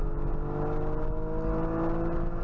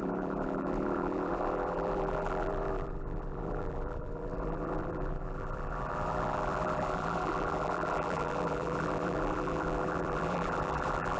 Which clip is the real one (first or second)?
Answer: first